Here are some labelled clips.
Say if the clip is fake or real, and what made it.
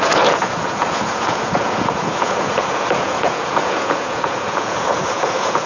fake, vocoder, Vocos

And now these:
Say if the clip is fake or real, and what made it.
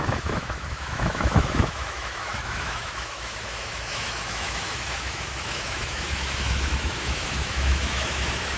fake, autoencoder, DAC-VAE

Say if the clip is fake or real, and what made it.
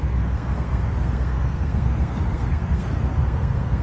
fake, codec, SNAC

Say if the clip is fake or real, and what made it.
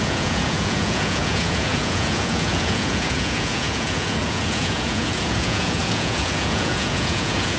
fake, vocoder, Vocos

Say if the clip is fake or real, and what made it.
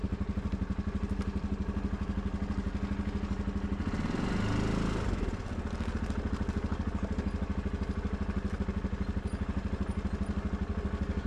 real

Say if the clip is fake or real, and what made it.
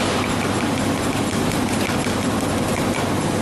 real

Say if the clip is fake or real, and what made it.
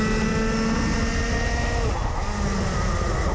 real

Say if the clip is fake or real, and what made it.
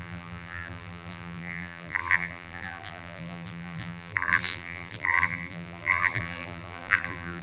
fake, vocoder, BigVGAN v2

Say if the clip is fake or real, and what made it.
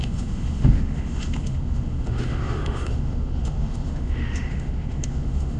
fake, autoencoder, DAC-VAE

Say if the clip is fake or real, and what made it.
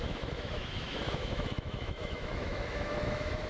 fake, autoencoder, DAC-VAE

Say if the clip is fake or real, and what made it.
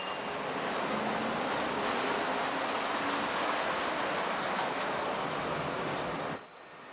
real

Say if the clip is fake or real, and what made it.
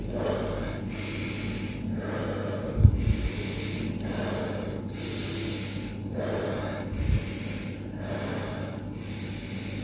real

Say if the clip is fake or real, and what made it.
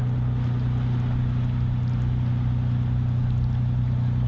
real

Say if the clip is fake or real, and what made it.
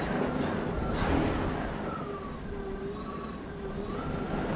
real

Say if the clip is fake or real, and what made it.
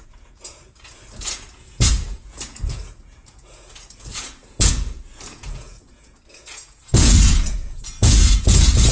fake, vocoder, Vocos